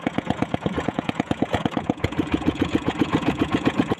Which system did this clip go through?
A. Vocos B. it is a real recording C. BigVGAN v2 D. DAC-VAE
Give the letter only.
A